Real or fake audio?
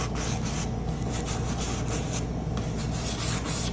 real